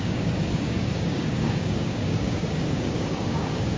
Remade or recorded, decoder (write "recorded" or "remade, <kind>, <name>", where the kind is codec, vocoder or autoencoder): remade, codec, DAC